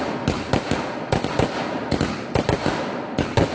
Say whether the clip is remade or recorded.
recorded